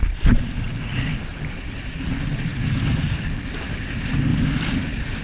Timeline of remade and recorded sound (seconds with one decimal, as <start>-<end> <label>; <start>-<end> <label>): 0.0-5.2 recorded